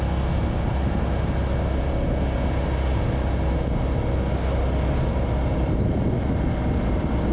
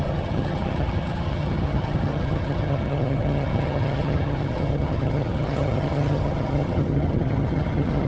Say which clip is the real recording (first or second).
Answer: first